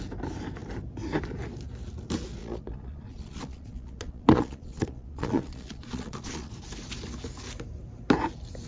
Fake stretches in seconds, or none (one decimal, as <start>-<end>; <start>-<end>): 2.4-6.5